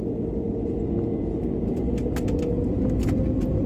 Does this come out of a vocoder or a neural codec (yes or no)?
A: no